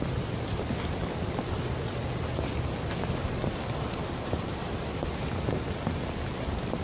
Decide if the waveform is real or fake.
real